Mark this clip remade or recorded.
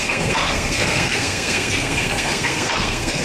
remade